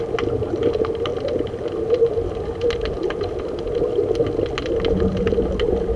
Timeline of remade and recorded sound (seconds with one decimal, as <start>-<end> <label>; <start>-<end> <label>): 0.0-6.0 recorded